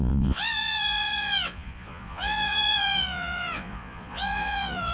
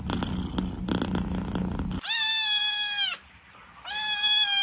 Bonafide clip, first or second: second